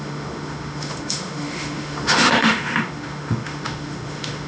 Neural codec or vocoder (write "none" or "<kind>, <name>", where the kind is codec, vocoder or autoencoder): autoencoder, DAC-VAE